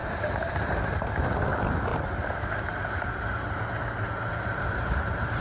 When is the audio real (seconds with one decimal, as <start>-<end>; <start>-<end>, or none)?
1.1-1.9